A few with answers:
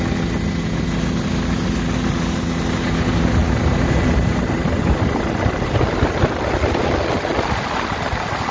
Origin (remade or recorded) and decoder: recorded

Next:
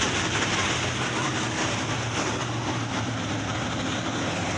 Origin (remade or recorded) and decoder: recorded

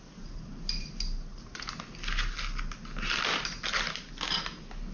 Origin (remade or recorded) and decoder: recorded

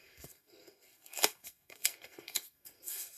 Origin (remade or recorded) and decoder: remade, codec, SNAC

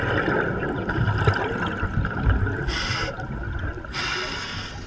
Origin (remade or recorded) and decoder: recorded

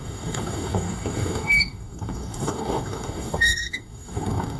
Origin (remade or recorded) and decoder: remade, codec, DAC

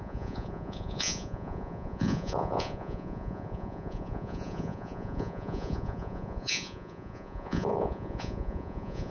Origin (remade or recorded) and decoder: remade, vocoder, Vocos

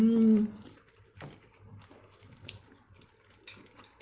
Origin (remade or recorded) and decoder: recorded